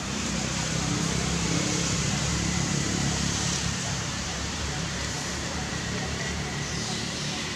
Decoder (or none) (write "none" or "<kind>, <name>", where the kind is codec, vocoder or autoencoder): vocoder, BigVGAN v2